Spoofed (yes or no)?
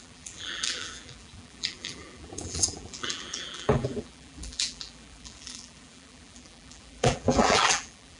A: yes